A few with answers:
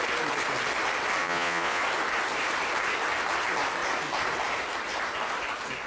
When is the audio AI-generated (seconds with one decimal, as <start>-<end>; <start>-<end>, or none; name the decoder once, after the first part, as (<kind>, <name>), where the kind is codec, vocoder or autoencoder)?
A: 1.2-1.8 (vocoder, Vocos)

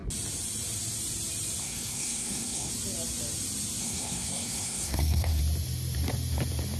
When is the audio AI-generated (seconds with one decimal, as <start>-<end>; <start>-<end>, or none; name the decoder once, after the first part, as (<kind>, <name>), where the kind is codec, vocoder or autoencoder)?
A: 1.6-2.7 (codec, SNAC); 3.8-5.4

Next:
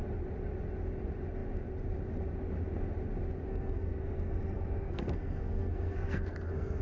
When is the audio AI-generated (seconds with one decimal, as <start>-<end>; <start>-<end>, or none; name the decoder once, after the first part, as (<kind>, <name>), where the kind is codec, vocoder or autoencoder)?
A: 3.5-6.8 (codec, SNAC)